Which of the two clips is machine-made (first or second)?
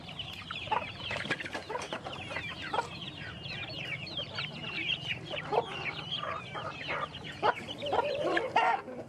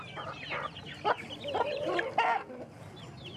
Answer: first